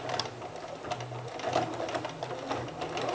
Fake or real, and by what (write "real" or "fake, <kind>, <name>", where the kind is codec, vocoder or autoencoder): real